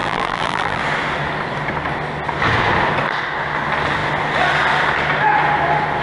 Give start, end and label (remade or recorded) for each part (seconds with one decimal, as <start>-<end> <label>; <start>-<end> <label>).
0.0-0.8 remade; 0.8-6.0 recorded